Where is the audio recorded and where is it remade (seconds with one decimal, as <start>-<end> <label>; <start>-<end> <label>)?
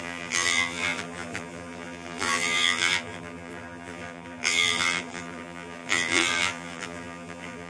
0.0-7.7 remade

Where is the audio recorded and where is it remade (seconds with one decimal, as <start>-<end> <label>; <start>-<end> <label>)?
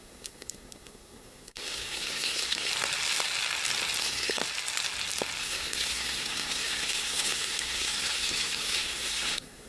0.0-2.7 remade; 2.7-4.0 recorded; 4.0-4.4 remade; 4.4-5.4 recorded; 5.4-9.7 remade